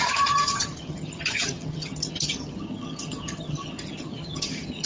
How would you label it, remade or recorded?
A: remade